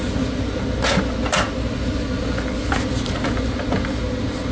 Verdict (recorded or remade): recorded